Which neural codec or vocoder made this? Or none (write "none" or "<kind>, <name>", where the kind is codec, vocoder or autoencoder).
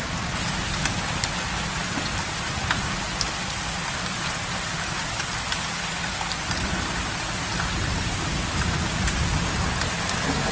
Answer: none